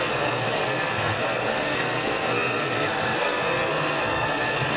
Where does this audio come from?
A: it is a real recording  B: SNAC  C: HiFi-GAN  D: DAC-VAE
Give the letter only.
B